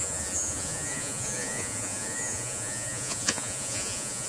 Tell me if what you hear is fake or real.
fake